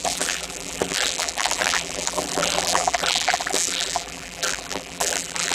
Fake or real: fake